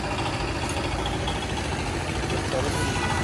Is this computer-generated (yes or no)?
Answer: no